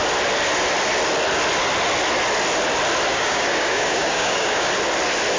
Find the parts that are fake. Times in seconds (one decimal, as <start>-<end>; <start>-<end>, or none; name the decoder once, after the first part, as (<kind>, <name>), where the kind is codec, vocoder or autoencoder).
3.1-4.7 (codec, DAC)